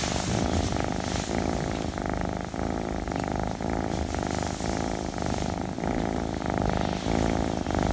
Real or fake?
real